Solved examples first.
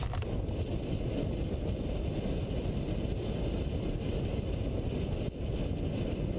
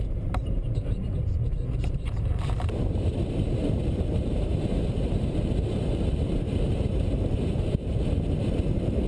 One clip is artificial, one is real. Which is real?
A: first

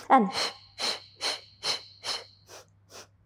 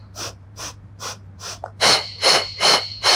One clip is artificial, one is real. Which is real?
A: first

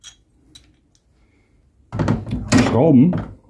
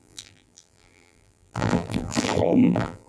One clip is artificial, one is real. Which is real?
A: first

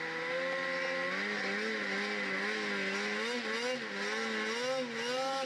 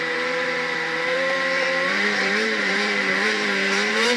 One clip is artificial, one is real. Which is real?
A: first